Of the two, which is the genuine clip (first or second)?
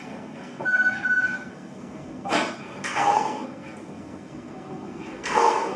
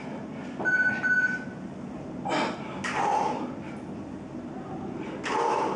second